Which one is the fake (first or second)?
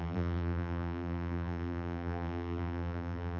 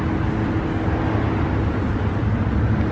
first